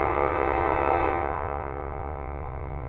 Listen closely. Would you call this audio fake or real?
fake